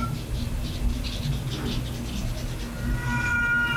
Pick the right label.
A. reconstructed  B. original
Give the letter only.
B